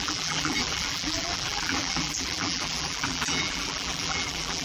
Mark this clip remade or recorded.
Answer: remade